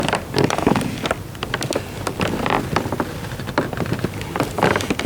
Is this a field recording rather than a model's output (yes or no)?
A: yes